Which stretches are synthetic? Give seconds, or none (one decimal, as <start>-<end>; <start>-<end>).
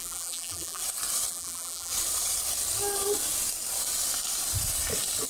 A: 0.0-0.8; 1.3-1.9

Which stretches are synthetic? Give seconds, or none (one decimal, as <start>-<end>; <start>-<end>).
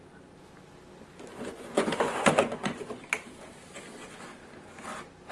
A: 1.3-3.0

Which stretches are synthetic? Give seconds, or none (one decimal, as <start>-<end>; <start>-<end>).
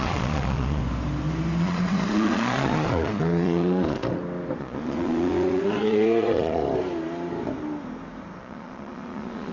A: 0.0-0.8; 1.6-4.0; 4.6-6.6; 8.4-9.5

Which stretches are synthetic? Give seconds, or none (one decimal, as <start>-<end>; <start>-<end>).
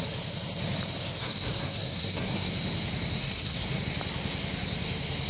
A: 1.2-2.5; 3.2-3.8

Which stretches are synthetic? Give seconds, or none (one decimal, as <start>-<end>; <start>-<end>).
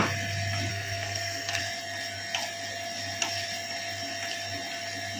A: 0.7-1.6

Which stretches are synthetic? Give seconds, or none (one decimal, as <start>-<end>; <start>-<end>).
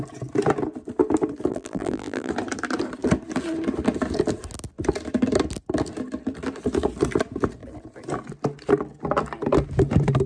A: 1.5-2.3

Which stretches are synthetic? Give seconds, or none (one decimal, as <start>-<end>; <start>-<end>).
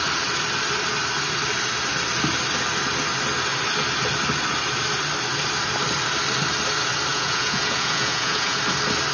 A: 7.1-8.6